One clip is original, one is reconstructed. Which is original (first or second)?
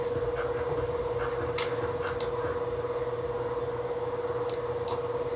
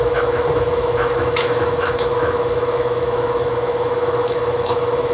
first